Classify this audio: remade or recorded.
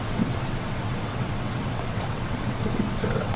remade